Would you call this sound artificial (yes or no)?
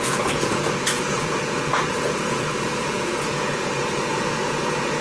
yes